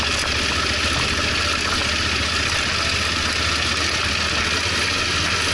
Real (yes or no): yes